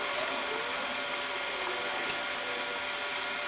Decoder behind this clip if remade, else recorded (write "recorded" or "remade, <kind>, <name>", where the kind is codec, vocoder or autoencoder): recorded